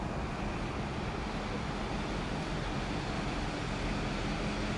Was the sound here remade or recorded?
recorded